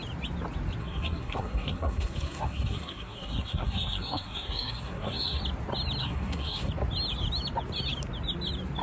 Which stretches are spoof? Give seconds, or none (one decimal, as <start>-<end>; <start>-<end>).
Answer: 0.8-5.4; 6.0-6.7